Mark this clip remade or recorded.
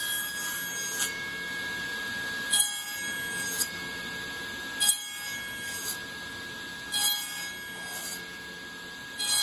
recorded